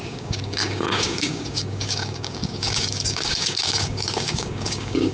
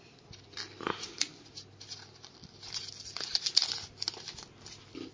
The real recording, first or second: second